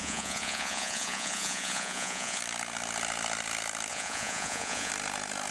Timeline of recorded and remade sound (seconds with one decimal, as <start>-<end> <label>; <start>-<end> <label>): 0.0-2.4 remade; 2.4-3.9 recorded; 3.9-4.9 remade; 4.9-5.5 recorded